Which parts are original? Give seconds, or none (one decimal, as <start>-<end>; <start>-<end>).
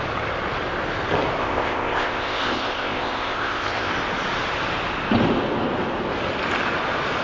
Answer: 0.0-1.4; 3.9-7.2